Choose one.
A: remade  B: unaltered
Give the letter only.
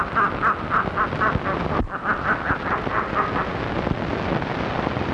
B